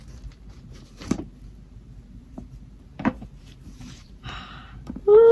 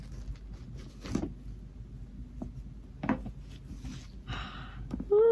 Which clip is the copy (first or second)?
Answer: first